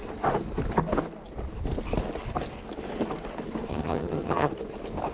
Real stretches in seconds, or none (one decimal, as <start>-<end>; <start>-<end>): 0.0-3.7; 4.5-5.1